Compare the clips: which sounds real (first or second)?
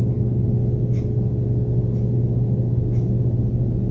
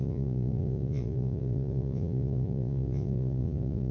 first